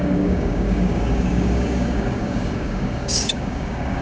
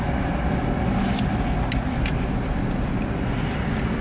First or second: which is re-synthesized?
first